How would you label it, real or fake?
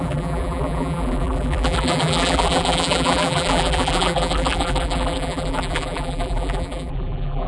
fake